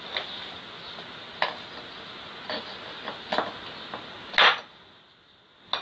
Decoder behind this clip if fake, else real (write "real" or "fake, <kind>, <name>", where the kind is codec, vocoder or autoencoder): real